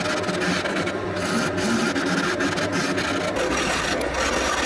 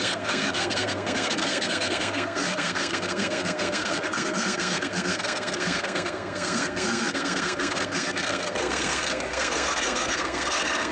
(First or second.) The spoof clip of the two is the second